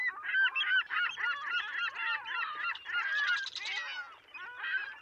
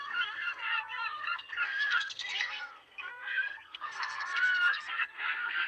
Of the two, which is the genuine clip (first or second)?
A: first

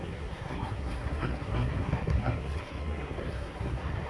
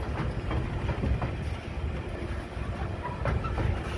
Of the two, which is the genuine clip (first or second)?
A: second